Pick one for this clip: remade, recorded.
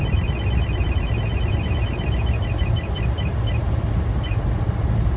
recorded